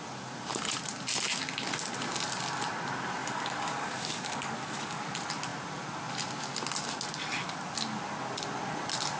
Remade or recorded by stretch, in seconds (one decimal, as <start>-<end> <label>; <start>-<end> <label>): 0.0-3.2 recorded; 3.2-5.0 remade; 5.0-9.2 recorded